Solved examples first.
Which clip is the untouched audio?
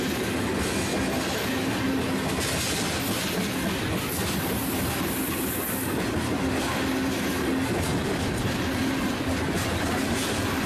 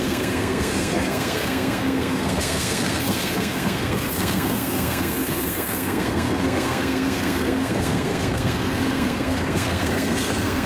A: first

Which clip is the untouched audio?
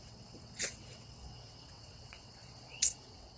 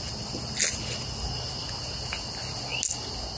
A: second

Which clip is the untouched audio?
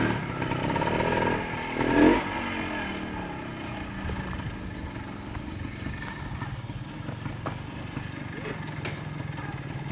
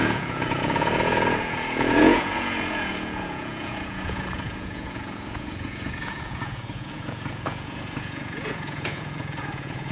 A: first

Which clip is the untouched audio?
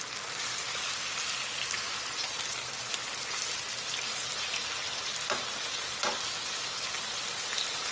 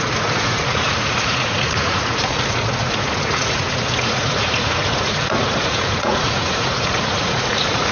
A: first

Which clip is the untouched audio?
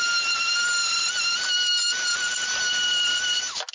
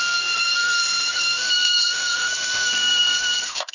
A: first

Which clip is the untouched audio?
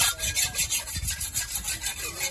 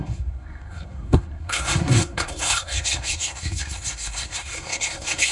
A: first